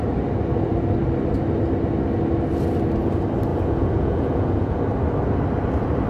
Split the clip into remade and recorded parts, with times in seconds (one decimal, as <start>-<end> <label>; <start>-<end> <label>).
0.0-3.5 recorded; 3.5-4.8 remade; 4.8-6.1 recorded